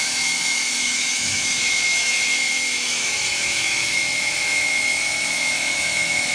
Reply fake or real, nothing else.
fake